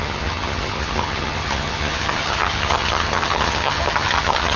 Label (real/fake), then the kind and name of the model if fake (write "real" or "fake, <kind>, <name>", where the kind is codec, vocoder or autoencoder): fake, vocoder, HiFi-GAN